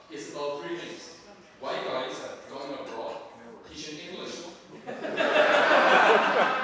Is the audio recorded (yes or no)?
yes